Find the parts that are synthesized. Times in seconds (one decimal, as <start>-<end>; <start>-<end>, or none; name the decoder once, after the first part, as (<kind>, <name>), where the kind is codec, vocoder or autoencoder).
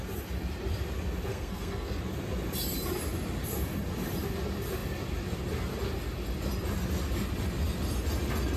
1.3-2.0 (codec, SNAC)